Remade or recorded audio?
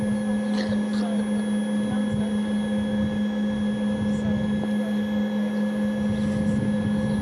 recorded